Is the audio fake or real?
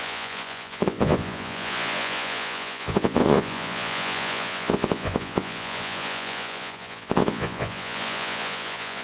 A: fake